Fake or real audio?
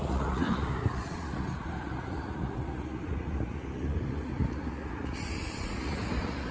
fake